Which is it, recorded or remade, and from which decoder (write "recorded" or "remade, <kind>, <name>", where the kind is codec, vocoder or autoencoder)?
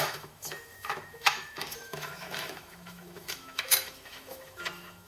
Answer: remade, autoencoder, DAC-VAE